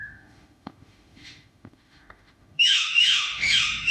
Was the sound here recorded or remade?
remade